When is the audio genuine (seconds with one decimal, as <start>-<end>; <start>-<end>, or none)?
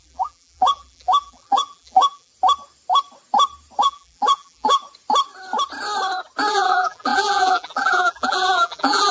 2.3-3.8; 4.8-6.5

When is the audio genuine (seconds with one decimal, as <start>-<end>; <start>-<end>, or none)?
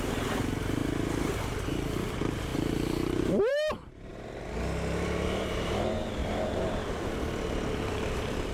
0.8-2.1; 2.5-3.2; 4.1-5.5; 6.2-7.9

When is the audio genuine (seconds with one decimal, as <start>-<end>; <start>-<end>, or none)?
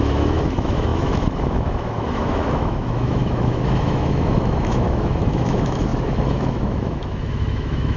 none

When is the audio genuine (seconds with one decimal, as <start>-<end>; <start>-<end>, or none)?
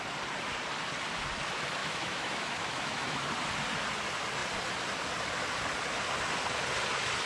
0.0-1.8; 3.3-7.3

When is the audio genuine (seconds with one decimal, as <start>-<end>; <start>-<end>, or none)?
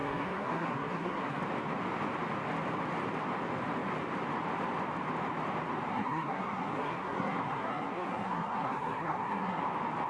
1.4-5.9; 9.6-10.1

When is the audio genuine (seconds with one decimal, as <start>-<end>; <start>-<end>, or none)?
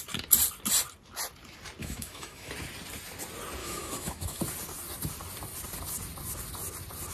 0.0-1.8; 2.5-3.6; 4.4-7.1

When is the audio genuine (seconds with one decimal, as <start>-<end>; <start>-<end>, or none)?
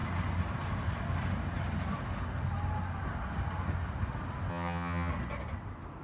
0.0-4.5; 5.1-6.0